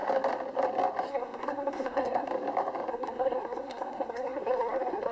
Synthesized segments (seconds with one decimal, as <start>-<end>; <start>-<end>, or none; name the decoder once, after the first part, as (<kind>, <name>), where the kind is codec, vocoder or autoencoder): 1.1-2.3 (codec, SNAC); 2.9-5.1